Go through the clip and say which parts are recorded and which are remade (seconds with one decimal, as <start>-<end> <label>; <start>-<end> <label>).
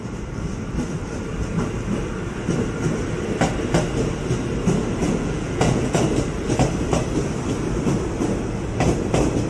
0.0-5.0 recorded; 5.0-6.0 remade; 6.0-9.5 recorded